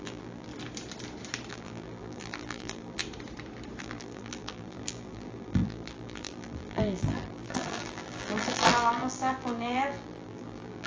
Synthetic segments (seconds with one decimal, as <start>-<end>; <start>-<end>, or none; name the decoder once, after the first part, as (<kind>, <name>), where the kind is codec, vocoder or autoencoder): 0.0-0.5 (vocoder, BigVGAN v2); 1.5-3.0; 3.8-10.9